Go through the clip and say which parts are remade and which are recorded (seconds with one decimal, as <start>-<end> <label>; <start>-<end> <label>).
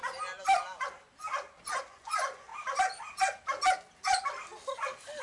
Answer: 0.0-1.8 recorded; 1.8-2.5 remade; 2.5-5.2 recorded